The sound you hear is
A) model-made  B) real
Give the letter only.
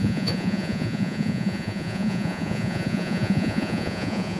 A